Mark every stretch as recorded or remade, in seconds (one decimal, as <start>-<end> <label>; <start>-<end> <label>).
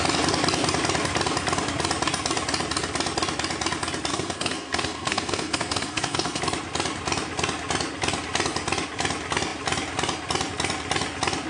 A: 0.0-4.1 recorded; 4.1-6.4 remade; 6.4-11.5 recorded